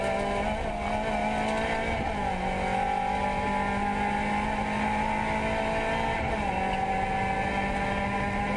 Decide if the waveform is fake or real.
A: real